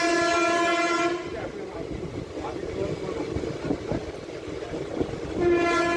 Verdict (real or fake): real